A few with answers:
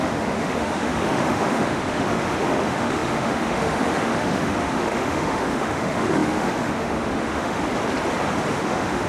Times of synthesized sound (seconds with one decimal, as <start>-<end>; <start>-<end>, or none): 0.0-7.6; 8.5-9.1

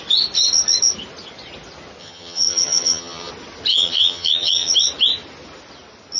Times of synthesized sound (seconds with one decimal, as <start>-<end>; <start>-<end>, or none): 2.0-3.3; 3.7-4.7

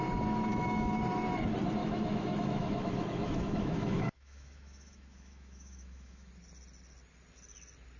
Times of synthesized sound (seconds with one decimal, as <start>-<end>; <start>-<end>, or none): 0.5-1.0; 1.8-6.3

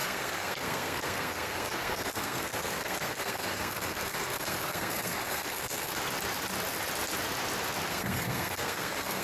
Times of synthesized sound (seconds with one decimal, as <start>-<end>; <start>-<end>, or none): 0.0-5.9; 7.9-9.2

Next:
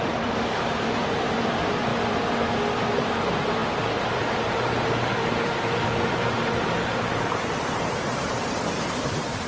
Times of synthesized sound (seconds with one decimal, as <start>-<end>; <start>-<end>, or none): 0.0-1.9; 2.9-9.5

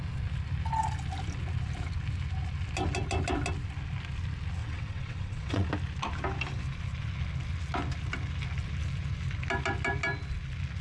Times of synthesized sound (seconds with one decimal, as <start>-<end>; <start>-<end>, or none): 4.6-5.7

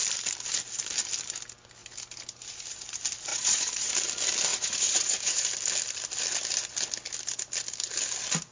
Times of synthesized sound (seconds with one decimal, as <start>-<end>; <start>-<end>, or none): 3.3-3.9; 4.5-5.5

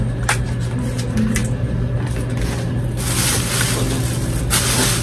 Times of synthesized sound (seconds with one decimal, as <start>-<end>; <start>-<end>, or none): none